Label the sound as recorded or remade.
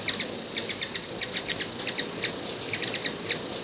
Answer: recorded